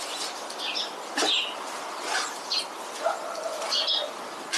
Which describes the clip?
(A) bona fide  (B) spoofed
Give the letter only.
A